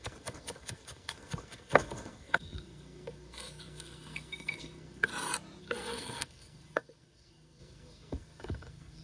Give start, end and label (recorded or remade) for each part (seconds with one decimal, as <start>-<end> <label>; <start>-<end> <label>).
0.0-5.1 remade; 5.1-5.6 recorded; 5.6-9.0 remade